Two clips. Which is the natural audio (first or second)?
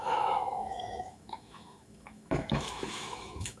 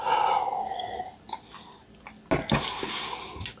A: second